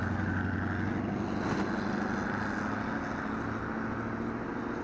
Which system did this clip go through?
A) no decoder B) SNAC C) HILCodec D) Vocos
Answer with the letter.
A